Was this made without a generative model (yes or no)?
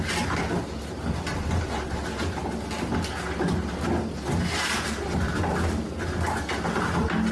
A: yes